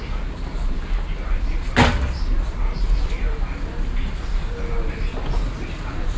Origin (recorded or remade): recorded